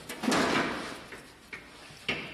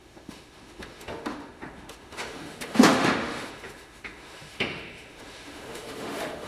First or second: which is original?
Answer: first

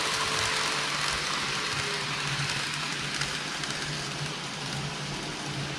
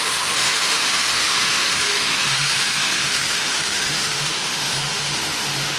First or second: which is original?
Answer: first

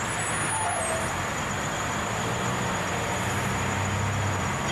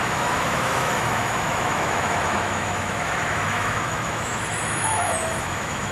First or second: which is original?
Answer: first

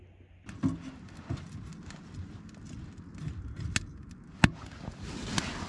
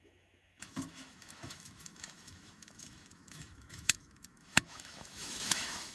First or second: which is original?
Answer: first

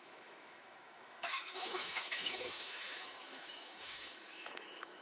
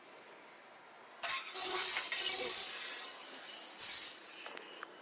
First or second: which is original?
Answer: second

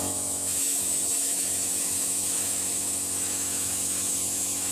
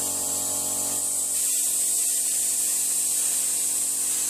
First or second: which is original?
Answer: second